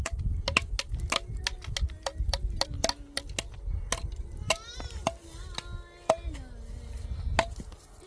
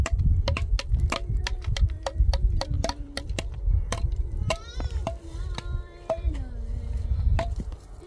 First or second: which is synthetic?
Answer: second